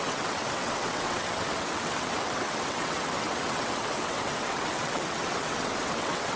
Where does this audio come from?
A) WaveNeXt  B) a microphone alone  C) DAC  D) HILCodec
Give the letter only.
A